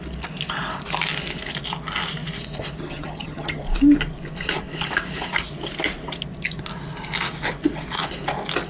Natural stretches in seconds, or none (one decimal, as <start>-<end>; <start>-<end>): 0.0-2.8; 3.6-8.7

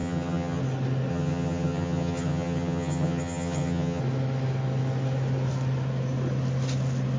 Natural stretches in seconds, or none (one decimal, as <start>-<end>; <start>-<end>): 0.6-1.1; 4.0-7.2

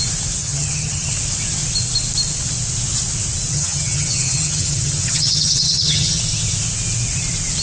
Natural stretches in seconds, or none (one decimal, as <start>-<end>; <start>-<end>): 0.0-0.4; 1.1-3.5; 6.2-7.6